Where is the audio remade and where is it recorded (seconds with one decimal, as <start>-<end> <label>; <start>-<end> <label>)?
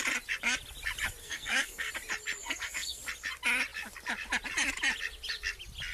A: 0.0-1.2 recorded; 1.2-1.9 remade; 1.9-2.4 recorded; 2.4-3.0 remade; 3.0-5.9 recorded